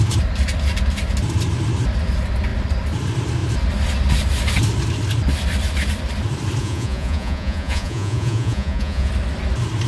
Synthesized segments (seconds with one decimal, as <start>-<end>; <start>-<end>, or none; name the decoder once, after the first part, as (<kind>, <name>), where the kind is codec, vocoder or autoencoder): 6.6-9.1 (vocoder, Vocos)